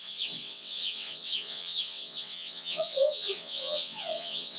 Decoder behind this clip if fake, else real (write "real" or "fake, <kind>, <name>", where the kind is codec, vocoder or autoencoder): fake, vocoder, WaveNeXt